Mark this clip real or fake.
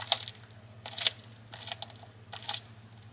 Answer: real